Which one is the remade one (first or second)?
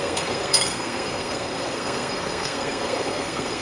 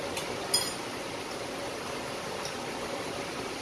first